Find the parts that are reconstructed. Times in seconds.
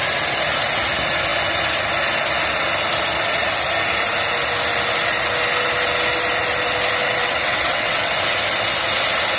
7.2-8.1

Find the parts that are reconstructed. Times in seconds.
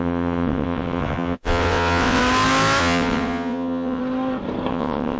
0.0-2.2; 2.8-4.0; 4.7-5.2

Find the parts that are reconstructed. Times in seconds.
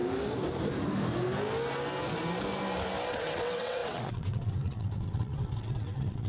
3.1-6.3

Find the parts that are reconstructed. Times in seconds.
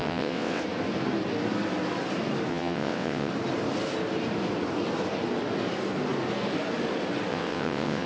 0.0-0.6; 2.5-3.3; 7.3-8.1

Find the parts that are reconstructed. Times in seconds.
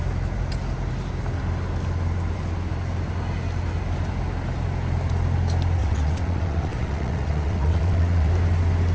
5.8-8.3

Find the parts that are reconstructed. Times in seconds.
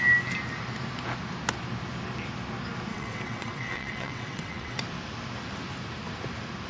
2.9-4.8